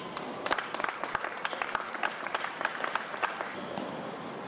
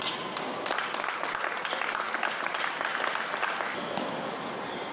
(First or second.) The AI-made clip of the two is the first